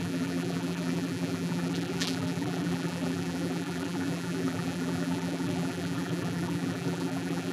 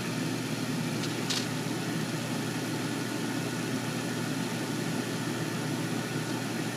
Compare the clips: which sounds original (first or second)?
second